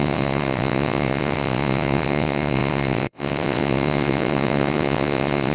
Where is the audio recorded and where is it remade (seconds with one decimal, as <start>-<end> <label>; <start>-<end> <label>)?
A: 0.0-5.5 remade